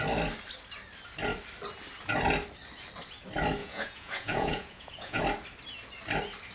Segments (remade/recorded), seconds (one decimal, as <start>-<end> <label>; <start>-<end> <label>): 0.0-3.6 recorded; 3.6-5.2 remade; 5.2-6.5 recorded